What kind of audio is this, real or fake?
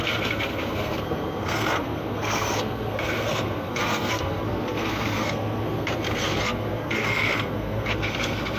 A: fake